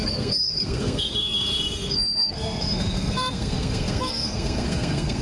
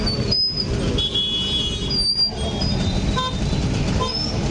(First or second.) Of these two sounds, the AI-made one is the first